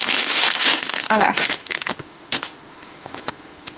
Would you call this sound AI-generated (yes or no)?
yes